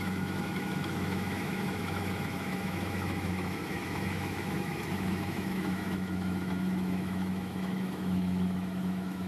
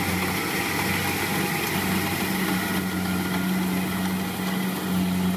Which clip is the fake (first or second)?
first